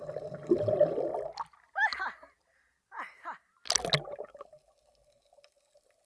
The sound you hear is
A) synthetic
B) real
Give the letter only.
B